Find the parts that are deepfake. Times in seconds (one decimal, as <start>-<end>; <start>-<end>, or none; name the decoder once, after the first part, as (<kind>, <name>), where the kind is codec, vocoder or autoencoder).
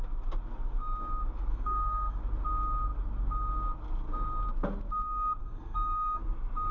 1.5-2.2 (codec, SNAC); 5.4-6.2